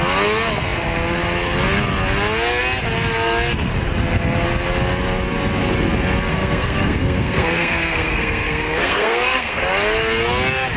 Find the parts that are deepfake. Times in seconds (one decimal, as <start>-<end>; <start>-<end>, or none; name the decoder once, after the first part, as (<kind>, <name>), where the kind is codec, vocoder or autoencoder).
6.3-9.6 (codec, SNAC)